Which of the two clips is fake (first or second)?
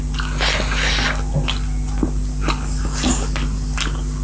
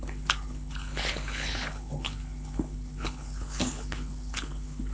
second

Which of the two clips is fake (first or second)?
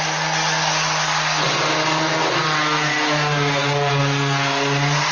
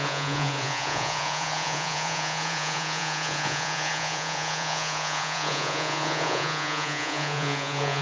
second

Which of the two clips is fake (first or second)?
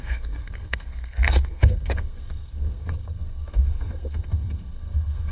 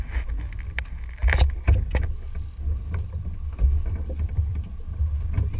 first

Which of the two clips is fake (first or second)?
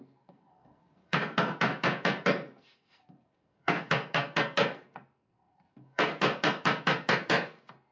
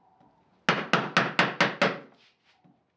first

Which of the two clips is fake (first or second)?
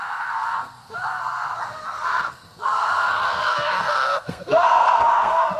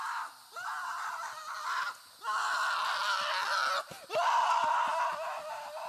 first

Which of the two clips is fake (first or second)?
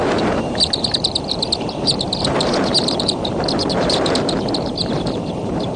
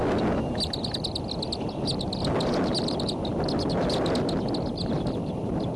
first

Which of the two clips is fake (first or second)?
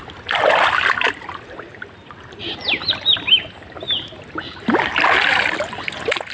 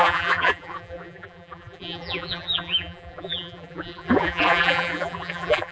second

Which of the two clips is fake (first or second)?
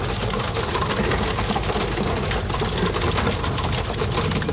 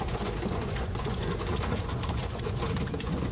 second